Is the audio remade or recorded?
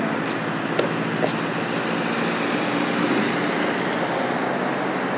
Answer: recorded